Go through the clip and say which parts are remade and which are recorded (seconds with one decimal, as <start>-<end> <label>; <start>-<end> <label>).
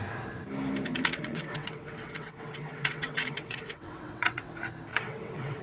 0.0-1.1 recorded; 1.1-4.5 remade; 4.5-4.9 recorded; 4.9-5.6 remade